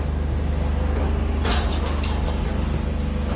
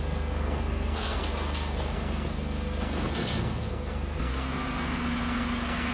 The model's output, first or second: second